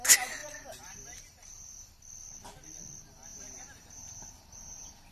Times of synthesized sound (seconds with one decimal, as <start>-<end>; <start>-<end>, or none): 0.4-1.9; 3.3-5.1